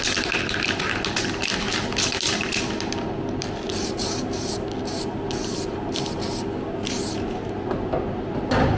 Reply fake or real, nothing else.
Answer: real